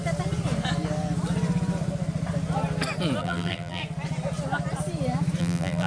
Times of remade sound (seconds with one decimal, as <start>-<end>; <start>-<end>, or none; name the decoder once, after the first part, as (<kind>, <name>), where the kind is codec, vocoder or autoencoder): 3.2-3.8 (vocoder, BigVGAN v2); 5.4-5.9